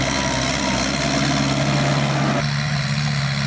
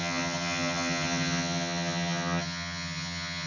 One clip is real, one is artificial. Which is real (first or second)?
first